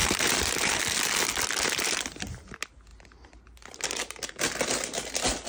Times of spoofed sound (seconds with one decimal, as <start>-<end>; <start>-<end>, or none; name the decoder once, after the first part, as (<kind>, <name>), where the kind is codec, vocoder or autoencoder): 0.0-0.8 (vocoder, BigVGAN v2); 2.9-4.4

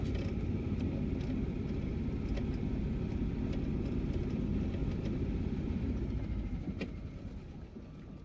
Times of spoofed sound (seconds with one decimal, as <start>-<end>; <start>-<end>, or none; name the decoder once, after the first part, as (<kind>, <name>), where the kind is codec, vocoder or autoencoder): 4.8-6.7 (vocoder, BigVGAN v2)

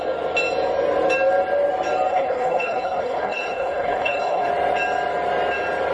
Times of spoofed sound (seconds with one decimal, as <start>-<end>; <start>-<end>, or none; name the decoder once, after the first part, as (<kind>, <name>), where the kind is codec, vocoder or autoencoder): 2.1-4.5 (codec, HILCodec)

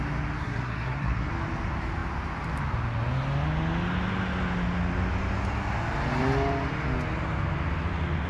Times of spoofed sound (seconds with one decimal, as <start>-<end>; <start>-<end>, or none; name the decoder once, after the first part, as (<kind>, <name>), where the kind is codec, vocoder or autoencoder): 0.4-1.3 (codec, SNAC)

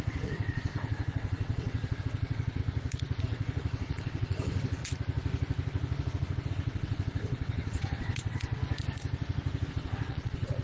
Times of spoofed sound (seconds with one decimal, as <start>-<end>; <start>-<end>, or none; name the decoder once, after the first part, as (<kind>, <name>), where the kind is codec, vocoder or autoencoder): 0.0-2.6 (vocoder, WaveNeXt); 3.2-4.8; 6.5-8.6; 9.7-10.6

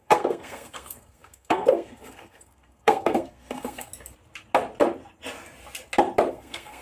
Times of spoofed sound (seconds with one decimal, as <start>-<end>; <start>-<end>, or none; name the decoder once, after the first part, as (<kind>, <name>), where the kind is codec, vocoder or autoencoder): 0.0-3.9 (codec, SNAC); 6.3-6.8